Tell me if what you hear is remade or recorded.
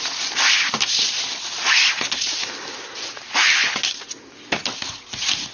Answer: recorded